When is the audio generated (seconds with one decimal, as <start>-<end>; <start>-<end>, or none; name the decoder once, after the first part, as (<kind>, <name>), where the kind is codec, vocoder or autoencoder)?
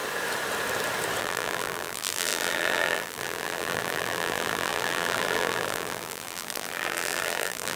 1.2-7.8 (vocoder, BigVGAN v2)